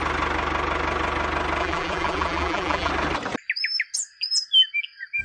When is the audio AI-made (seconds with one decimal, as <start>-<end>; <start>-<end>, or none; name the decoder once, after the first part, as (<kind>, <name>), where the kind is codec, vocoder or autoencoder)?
1.6-2.9 (vocoder, BigVGAN v2)